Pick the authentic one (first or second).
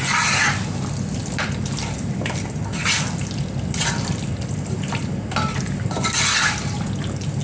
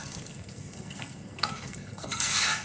first